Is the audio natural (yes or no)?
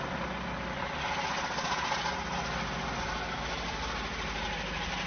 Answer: yes